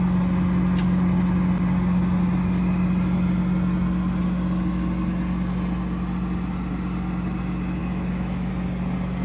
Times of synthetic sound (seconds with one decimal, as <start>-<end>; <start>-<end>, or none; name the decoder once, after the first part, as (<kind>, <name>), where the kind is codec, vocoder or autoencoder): 7.8-8.5 (autoencoder, DAC-VAE)